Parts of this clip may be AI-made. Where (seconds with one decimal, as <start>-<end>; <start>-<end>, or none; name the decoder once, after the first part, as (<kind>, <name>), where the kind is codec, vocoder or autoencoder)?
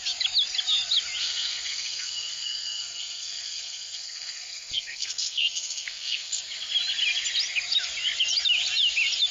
1.2-6.4 (codec, SNAC)